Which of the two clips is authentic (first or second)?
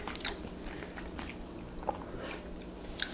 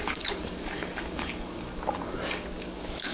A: first